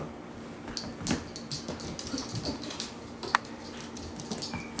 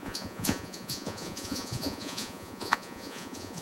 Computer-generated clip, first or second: second